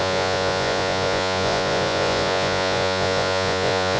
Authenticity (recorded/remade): remade